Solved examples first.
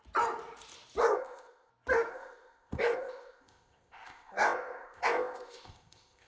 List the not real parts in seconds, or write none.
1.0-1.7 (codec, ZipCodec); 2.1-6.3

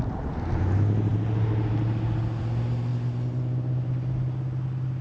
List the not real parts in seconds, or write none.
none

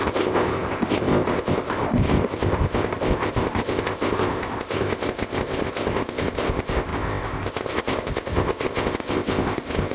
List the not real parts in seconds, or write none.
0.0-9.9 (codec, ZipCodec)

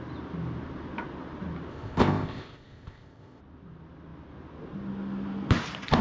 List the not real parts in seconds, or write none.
1.7-3.4 (codec, ZipCodec)

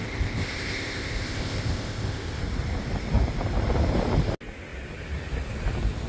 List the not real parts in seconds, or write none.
0.0-2.4 (codec, ZipCodec)

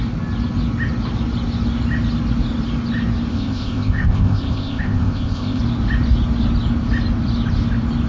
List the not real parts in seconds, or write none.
3.3-5.6 (codec, ZipCodec)